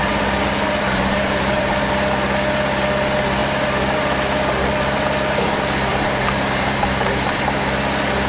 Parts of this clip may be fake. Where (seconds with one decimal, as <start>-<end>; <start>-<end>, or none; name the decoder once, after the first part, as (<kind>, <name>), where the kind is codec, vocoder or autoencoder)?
0.0-1.9 (vocoder, BigVGAN v2); 5.9-7.6